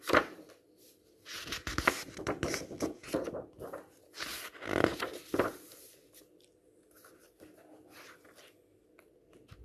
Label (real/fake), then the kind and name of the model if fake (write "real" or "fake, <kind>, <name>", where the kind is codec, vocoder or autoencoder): real